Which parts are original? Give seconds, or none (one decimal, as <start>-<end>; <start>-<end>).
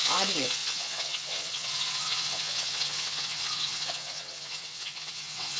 none